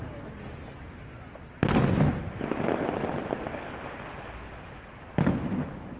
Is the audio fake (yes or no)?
no